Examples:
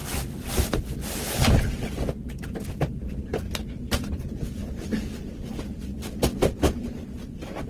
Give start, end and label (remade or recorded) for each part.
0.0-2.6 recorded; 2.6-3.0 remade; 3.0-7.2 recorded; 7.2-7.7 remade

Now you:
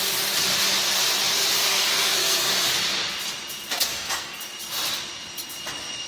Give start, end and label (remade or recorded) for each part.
0.0-1.7 recorded; 1.7-2.5 remade; 2.5-3.8 recorded; 3.8-4.4 remade; 4.4-6.1 recorded

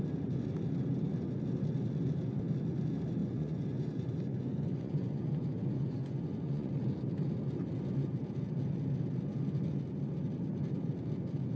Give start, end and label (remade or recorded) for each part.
0.0-3.2 recorded; 3.2-6.7 remade; 6.7-11.6 recorded

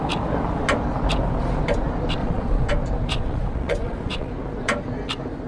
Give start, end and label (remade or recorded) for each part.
0.0-2.2 recorded; 2.2-2.7 remade; 2.7-3.1 recorded; 3.1-4.3 remade; 4.3-5.5 recorded

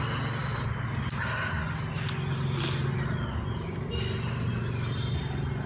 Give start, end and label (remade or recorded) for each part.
0.0-5.7 recorded